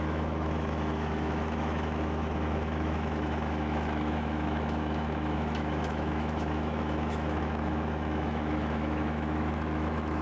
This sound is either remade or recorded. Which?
remade